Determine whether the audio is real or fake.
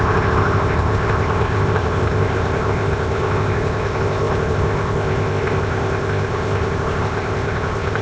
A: fake